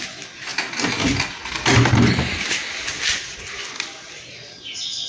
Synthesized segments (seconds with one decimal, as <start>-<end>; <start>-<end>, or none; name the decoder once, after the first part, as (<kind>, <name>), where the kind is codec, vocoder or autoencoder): none